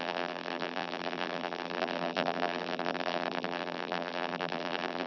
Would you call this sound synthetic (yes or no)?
yes